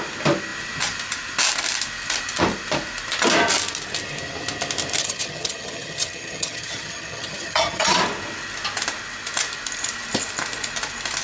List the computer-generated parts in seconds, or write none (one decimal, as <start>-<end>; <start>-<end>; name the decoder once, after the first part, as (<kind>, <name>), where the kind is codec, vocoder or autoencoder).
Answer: 5.0-8.0 (vocoder, HiFi-GAN)